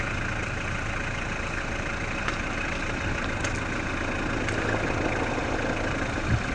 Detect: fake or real real